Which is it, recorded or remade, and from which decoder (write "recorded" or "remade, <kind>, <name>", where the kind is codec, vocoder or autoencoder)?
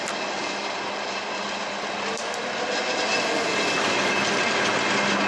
recorded